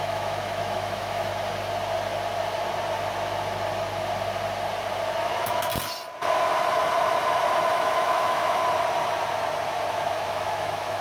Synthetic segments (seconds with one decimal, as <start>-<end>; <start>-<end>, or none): 0.0-1.3; 5.2-5.7; 7.7-8.6; 9.9-11.0